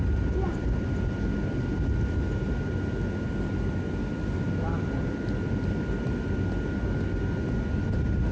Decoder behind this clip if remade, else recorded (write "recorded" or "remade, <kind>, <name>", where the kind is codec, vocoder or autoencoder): recorded